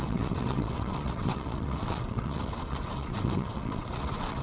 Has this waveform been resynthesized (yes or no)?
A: yes